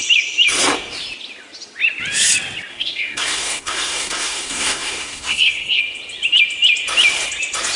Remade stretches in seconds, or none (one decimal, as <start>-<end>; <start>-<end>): 2.7-5.8